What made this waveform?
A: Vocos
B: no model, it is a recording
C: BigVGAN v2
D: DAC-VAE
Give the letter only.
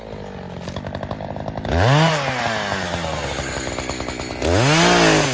B